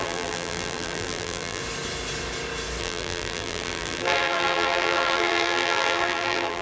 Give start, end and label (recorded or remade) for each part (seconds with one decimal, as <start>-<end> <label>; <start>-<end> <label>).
0.0-1.6 remade; 1.6-2.8 recorded; 2.8-6.6 remade